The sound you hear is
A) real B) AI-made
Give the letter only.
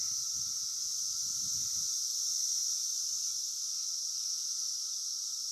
A